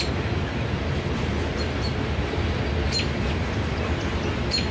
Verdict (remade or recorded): recorded